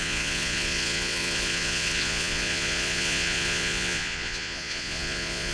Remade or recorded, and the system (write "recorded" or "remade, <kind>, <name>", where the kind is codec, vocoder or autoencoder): remade, vocoder, Vocos